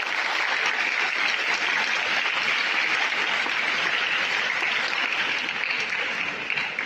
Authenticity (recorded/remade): recorded